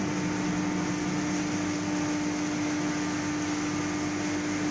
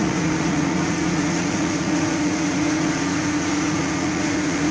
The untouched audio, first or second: first